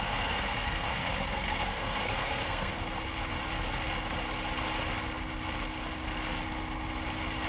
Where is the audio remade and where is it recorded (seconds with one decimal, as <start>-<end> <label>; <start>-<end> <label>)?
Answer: 0.0-2.7 remade; 2.7-7.5 recorded